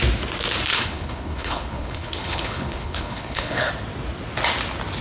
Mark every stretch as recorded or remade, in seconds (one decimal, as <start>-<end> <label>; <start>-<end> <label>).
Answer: 0.0-0.7 recorded; 0.7-3.7 remade; 3.7-5.0 recorded